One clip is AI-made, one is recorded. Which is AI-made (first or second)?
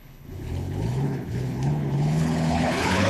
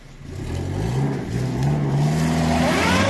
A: first